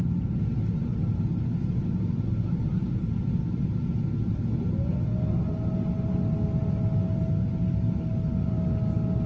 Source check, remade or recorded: recorded